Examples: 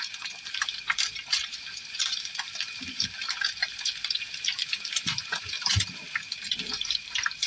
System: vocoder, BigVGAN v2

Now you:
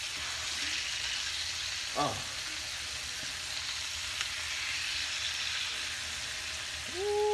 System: none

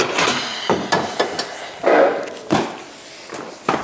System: none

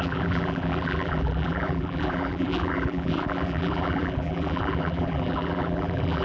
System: vocoder, BigVGAN v2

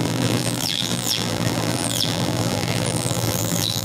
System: vocoder, BigVGAN v2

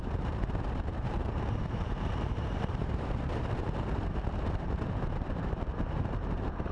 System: vocoder, BigVGAN v2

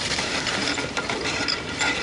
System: none